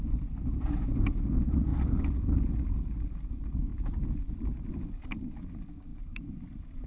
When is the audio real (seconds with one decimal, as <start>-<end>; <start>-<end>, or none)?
1.0-3.7; 4.7-5.9